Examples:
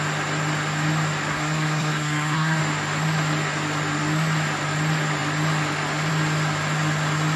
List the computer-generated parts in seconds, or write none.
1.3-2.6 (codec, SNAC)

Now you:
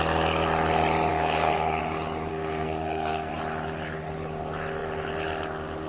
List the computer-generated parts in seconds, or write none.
1.1-1.8 (codec, SNAC); 2.3-3.3

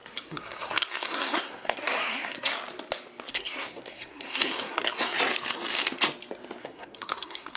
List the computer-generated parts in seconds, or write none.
0.0-2.5 (codec, SNAC); 3.3-5.3; 6.6-7.6